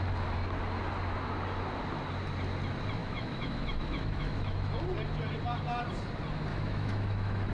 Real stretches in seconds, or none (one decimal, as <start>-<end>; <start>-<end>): 0.0-3.0; 4.8-6.5